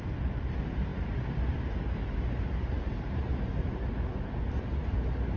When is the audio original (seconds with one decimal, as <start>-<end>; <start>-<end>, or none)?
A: 0.0-5.4